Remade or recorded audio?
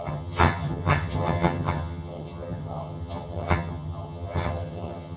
remade